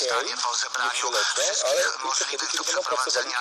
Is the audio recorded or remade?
remade